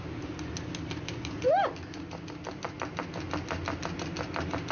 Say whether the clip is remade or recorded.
recorded